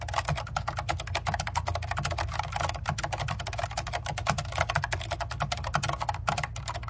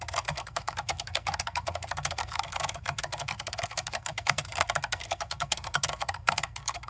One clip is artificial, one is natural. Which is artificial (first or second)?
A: second